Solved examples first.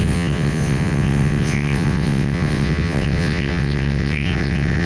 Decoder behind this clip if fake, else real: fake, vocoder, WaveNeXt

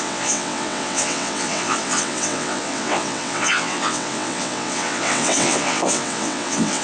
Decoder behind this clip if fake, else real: fake, vocoder, WaveNeXt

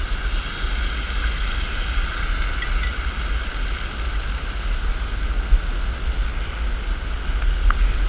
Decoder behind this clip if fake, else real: real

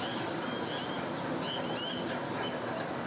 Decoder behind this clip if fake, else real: real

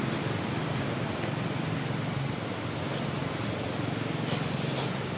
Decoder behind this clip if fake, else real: real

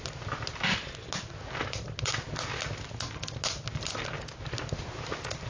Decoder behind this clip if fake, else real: real